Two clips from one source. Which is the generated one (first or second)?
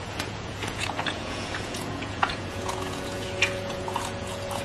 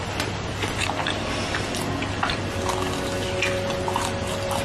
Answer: first